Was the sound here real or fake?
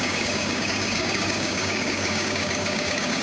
fake